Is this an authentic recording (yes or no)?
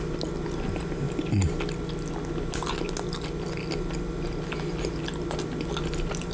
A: yes